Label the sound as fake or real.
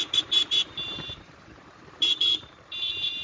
fake